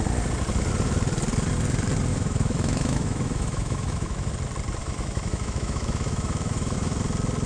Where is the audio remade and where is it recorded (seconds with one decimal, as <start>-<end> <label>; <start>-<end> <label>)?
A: 0.0-2.1 recorded; 2.1-4.3 remade; 4.3-4.8 recorded; 4.8-7.0 remade; 7.0-7.5 recorded